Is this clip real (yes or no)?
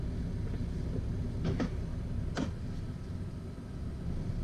yes